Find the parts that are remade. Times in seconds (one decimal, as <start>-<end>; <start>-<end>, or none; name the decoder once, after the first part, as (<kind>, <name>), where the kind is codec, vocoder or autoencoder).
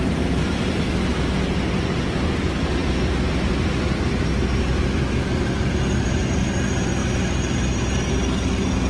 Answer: none